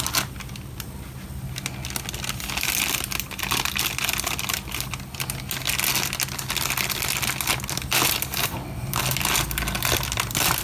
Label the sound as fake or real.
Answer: real